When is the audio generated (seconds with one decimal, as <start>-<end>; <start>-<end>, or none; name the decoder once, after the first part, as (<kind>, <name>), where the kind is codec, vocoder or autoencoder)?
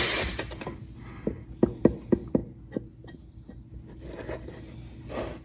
none